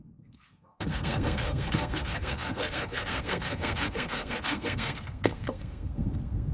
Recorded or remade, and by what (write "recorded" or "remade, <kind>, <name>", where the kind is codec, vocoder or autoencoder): remade, codec, SNAC